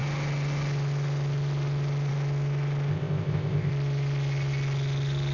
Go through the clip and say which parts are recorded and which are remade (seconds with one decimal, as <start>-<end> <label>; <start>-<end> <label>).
0.0-2.9 recorded; 2.9-3.7 remade; 3.7-5.3 recorded